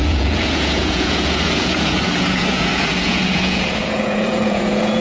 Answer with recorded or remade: remade